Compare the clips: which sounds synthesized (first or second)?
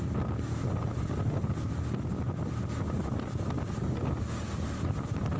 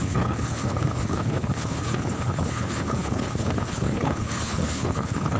second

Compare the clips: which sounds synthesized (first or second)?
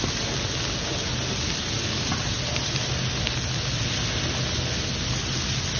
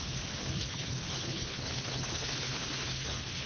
second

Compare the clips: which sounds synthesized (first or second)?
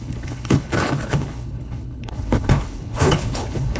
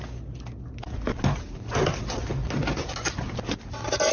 first